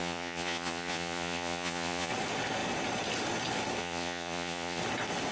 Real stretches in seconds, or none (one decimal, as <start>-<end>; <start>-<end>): 2.1-3.8; 4.8-5.3